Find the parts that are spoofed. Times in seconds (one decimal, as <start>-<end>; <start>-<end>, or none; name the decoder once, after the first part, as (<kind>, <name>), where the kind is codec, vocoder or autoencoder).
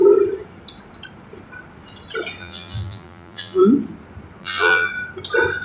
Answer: 2.4-3.6 (vocoder, BigVGAN v2); 4.4-4.9